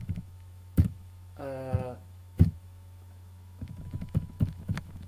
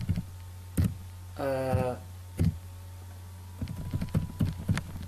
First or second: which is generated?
first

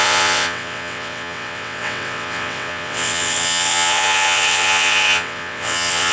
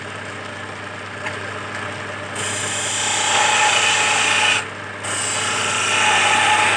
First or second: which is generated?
first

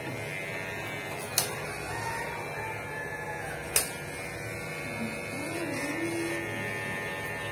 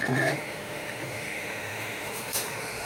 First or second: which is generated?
second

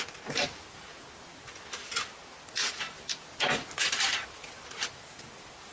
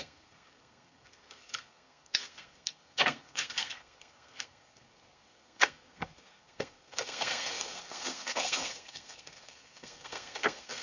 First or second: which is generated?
second